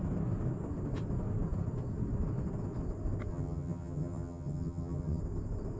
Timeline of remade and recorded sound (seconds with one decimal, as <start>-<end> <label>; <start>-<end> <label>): 0.0-3.3 recorded; 3.3-5.2 remade; 5.2-5.8 recorded